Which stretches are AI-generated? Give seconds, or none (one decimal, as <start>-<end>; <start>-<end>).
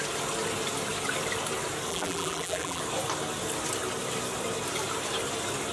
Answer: 1.9-2.8